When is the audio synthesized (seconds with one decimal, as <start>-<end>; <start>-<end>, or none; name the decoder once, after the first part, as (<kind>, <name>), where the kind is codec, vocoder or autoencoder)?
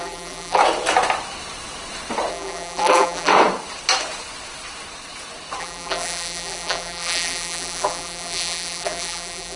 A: 0.0-0.6 (vocoder, BigVGAN v2); 2.3-3.3; 5.6-9.6